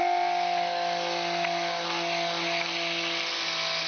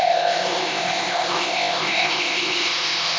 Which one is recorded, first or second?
first